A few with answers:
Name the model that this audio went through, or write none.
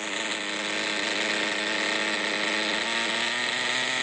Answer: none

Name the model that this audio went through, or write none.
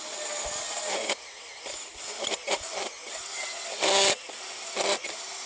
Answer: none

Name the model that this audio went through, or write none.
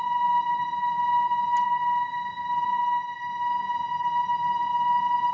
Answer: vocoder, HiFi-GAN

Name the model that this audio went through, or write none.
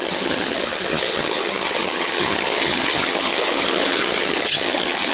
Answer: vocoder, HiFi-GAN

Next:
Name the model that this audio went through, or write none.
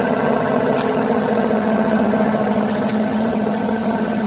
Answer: vocoder, HiFi-GAN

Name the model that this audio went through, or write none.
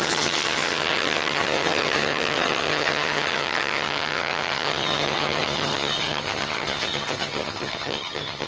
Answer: vocoder, HiFi-GAN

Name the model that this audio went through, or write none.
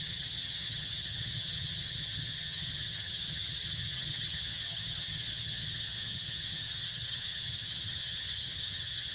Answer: vocoder, HiFi-GAN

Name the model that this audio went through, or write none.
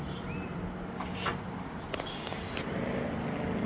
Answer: none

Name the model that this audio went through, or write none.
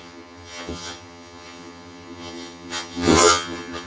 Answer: vocoder, HiFi-GAN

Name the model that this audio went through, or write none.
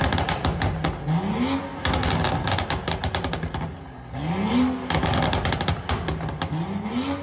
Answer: none